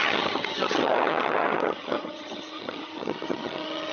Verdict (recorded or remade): remade